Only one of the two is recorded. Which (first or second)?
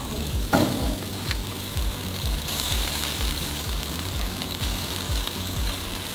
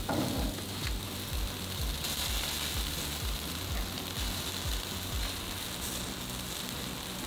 second